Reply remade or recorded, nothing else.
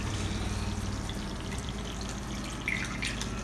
recorded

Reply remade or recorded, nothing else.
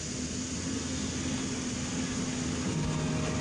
recorded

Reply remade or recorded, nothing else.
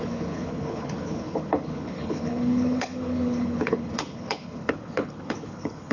remade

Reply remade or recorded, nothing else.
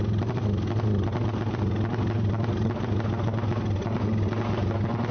recorded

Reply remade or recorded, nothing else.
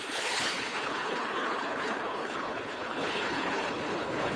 remade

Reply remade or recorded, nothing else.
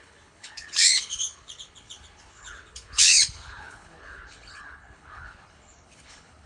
remade